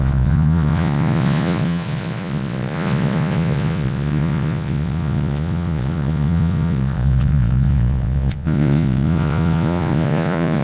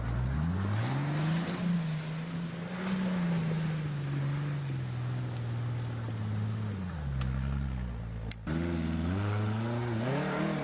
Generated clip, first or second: first